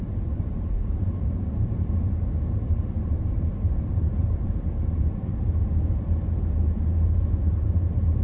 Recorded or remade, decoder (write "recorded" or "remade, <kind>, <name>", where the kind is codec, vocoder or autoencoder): remade, vocoder, BigVGAN v2